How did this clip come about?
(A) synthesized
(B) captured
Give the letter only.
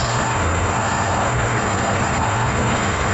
A